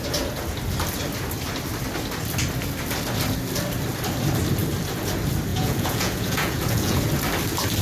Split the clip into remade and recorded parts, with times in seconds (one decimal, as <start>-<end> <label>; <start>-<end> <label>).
0.0-5.5 recorded; 5.5-7.0 remade; 7.0-7.8 recorded